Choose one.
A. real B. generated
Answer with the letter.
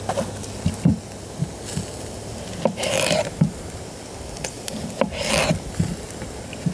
A